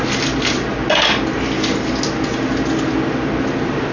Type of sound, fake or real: real